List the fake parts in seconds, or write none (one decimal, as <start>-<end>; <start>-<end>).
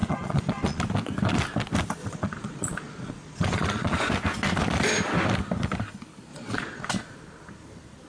0.0-0.8; 2.0-4.1; 6.3-6.9